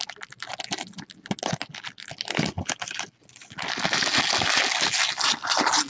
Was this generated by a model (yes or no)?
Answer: no